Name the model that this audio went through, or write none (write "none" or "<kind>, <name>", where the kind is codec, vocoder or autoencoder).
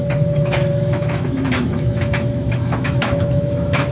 autoencoder, DAC-VAE